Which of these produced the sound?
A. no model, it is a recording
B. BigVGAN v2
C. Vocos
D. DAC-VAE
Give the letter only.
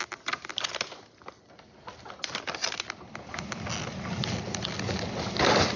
A